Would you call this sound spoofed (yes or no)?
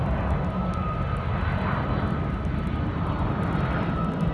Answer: no